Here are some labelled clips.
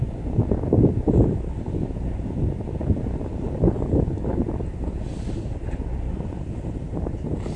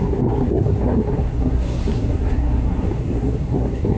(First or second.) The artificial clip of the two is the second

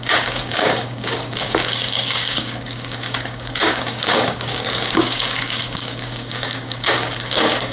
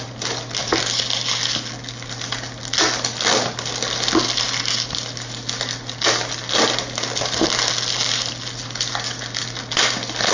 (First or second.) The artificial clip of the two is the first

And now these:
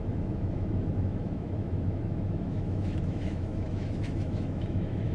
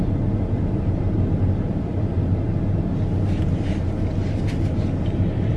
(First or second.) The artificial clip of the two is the first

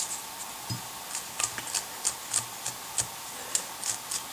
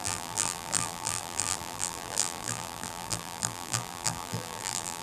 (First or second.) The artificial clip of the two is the second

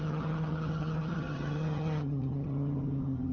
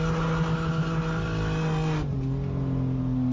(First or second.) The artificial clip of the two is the first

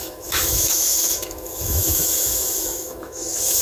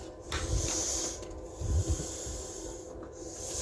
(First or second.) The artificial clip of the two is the first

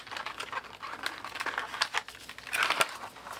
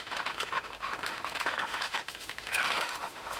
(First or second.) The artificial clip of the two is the second